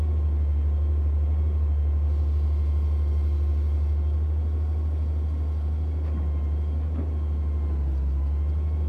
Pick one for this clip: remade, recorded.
recorded